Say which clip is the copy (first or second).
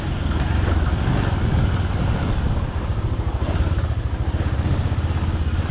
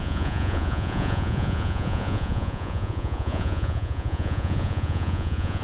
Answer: second